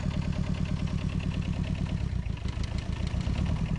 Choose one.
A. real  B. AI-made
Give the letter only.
A